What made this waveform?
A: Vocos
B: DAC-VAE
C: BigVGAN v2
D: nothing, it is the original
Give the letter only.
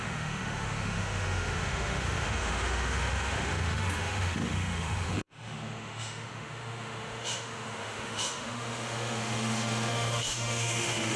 B